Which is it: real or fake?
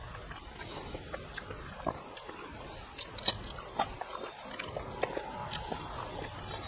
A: real